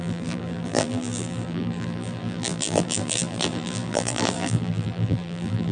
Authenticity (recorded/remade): remade